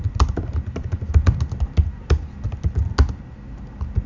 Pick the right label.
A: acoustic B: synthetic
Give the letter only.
A